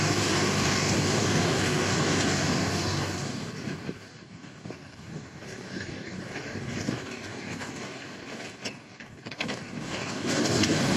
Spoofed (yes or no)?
yes